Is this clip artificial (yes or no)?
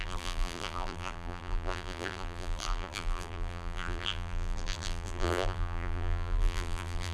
yes